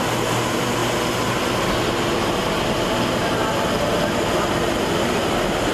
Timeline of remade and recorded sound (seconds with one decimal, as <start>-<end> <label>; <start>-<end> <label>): 0.0-5.7 recorded

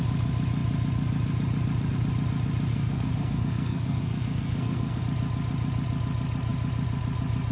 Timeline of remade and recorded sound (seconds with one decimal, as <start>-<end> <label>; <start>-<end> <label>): 0.0-2.7 recorded; 2.7-5.0 remade; 5.0-7.5 recorded

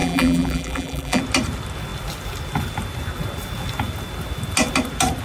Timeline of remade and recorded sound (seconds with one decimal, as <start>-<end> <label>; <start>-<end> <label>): 0.0-1.2 remade; 1.2-5.2 recorded